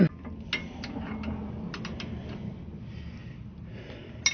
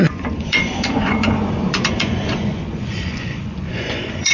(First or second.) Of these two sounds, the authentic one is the first